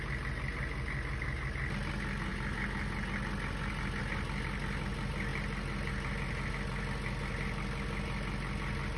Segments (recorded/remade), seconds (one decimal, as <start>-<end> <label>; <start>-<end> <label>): 0.0-9.0 recorded